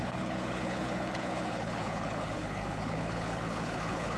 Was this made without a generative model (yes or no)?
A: no